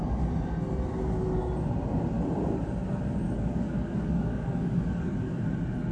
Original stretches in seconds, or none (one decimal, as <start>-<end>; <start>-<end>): 0.0-3.2; 5.4-5.9